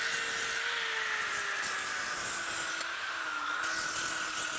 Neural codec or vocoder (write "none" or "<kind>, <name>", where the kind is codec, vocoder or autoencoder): none